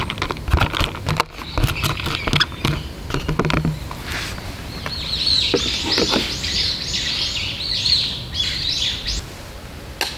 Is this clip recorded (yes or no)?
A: yes